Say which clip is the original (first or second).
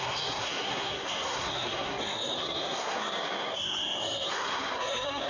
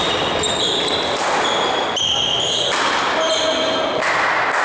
second